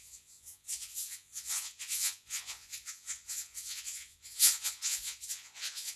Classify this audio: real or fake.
fake